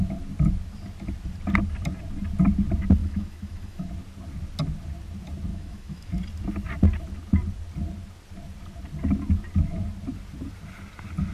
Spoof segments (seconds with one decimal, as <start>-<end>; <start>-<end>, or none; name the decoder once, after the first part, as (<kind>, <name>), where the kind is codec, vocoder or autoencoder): 3.0-3.9 (autoencoder, DAC-VAE); 5.5-6.1